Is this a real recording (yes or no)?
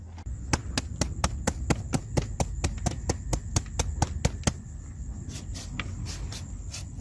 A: yes